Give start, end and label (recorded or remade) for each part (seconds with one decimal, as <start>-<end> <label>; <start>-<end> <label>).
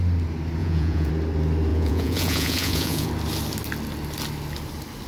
0.0-0.6 recorded; 0.6-1.1 remade; 1.1-1.7 recorded; 1.7-3.1 remade; 3.1-5.1 recorded